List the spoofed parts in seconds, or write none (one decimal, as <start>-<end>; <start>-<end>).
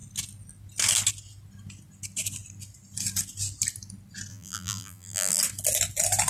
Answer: 4.3-5.4